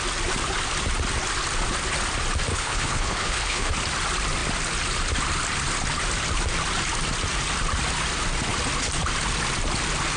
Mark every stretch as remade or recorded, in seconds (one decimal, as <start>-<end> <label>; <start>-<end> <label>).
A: 0.0-2.5 recorded; 2.5-3.7 remade; 3.7-10.2 recorded